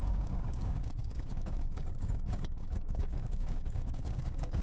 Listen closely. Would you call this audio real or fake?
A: fake